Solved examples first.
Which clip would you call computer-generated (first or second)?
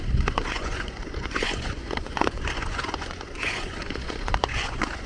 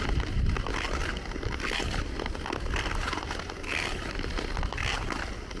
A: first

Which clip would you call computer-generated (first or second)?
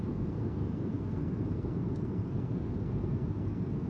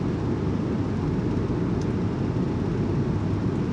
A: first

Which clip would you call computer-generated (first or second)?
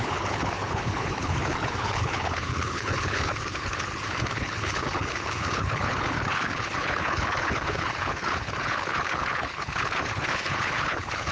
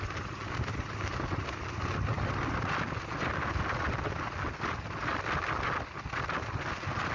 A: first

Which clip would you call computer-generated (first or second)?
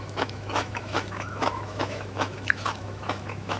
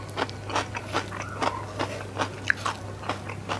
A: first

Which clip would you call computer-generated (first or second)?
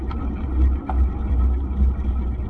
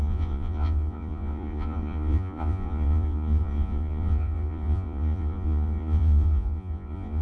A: second